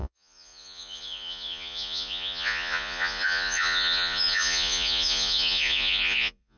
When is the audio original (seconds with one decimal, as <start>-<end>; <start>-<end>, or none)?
none